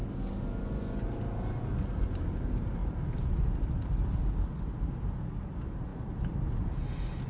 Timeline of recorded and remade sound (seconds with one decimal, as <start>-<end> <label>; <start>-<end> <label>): 0.0-7.3 recorded